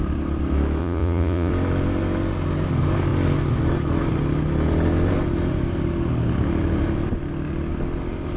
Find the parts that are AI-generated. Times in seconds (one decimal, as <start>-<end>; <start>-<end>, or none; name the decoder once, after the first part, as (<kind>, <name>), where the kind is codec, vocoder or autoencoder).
0.8-1.5 (vocoder, Vocos)